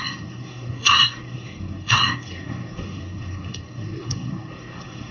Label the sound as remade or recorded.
remade